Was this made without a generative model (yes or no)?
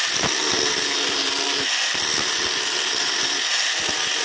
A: yes